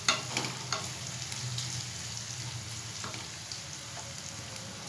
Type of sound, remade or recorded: recorded